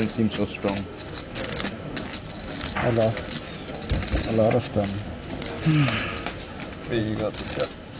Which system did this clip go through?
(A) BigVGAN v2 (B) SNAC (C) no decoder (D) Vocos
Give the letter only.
C